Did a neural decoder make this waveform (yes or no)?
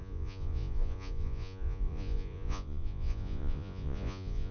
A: yes